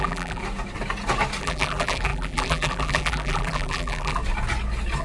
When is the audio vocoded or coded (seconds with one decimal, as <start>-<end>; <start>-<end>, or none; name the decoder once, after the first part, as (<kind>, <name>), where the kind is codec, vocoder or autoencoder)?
0.0-0.4 (vocoder, BigVGAN v2); 1.4-4.2